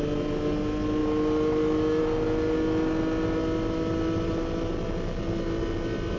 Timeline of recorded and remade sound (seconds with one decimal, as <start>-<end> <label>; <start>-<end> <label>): 0.0-6.2 recorded